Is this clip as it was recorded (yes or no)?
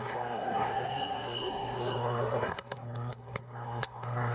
no